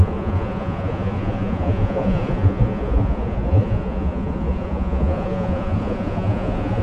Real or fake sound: fake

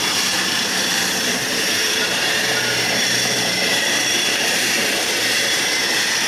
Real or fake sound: fake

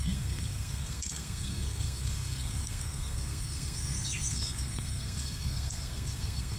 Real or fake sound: fake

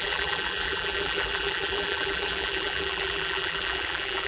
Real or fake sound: fake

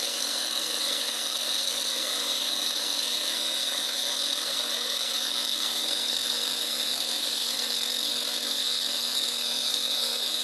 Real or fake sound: fake